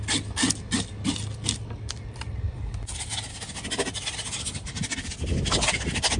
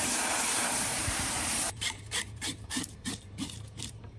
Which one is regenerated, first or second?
second